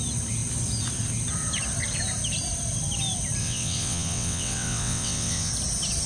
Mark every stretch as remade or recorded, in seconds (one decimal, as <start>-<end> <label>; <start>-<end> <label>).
0.0-3.4 recorded; 3.4-5.5 remade; 5.5-6.1 recorded